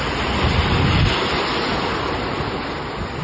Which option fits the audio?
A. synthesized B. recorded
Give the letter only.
B